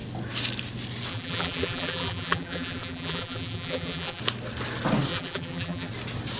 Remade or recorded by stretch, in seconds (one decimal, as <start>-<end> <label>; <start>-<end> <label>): 0.0-1.1 recorded; 1.1-4.2 remade; 4.2-5.1 recorded; 5.1-5.9 remade; 5.9-6.4 recorded